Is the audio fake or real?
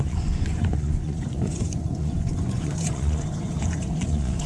fake